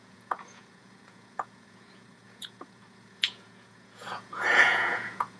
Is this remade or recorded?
remade